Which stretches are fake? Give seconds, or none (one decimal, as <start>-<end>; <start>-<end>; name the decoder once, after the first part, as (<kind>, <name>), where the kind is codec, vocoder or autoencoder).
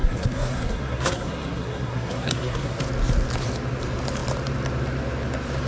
0.0-2.8 (codec, SNAC)